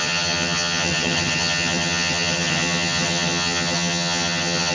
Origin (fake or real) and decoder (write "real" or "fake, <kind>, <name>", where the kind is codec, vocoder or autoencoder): fake, vocoder, HiFi-GAN